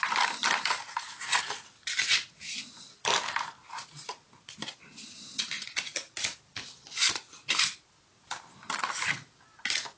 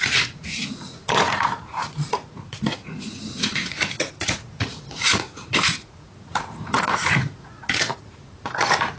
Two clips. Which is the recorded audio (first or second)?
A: first